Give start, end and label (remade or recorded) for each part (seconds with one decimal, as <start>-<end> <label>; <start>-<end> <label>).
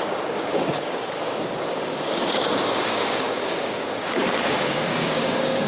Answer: 0.0-5.7 remade